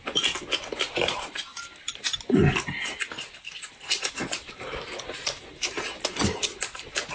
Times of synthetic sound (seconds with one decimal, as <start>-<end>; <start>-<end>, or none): none

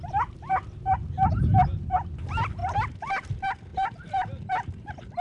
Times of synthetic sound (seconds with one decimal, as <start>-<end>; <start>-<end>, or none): none

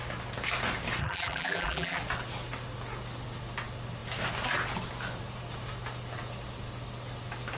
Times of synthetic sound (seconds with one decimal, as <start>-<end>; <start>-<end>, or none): 1.0-2.0